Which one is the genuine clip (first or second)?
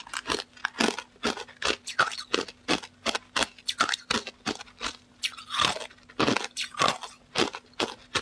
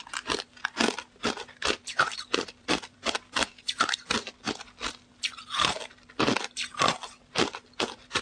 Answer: first